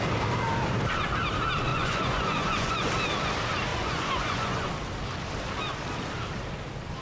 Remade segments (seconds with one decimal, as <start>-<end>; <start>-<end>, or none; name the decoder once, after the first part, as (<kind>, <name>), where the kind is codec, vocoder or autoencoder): 1.7-2.9 (vocoder, Vocos); 3.7-4.7